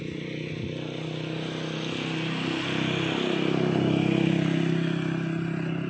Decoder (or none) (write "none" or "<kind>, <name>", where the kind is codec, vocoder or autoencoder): none